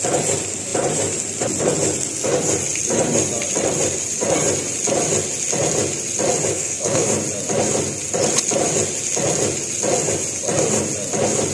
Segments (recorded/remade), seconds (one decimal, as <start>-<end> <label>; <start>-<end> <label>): 0.0-6.5 recorded; 6.5-7.1 remade; 7.1-11.5 recorded